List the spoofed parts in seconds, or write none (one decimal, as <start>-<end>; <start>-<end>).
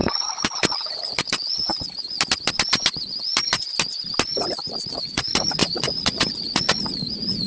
0.0-1.7; 4.9-7.5